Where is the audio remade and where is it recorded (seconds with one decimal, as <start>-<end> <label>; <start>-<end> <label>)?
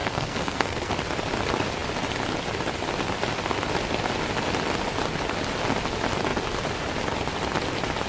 0.0-0.9 remade; 0.9-8.1 recorded